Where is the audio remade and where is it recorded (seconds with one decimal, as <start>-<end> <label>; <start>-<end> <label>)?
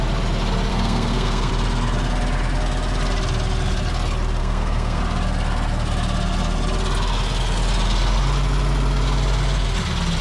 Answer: 0.0-0.7 recorded; 0.7-1.5 remade; 1.5-4.4 recorded; 4.4-5.0 remade; 5.0-10.2 recorded